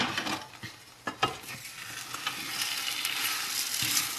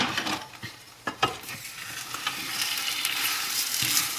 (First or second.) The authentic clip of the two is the first